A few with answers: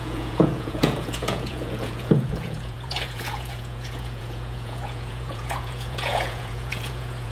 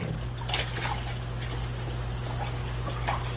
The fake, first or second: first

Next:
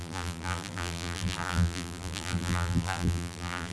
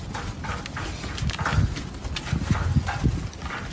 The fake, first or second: first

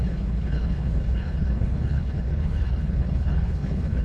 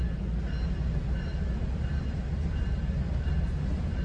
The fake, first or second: first